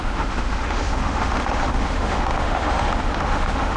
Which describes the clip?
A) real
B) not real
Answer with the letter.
B